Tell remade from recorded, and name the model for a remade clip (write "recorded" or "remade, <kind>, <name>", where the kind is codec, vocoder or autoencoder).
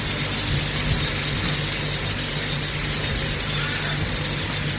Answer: recorded